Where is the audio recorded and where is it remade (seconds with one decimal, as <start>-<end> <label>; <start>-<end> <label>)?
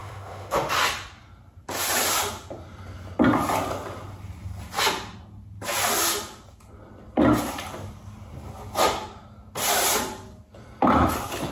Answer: 0.0-0.7 remade; 0.7-11.5 recorded